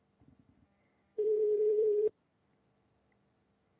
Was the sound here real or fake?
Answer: fake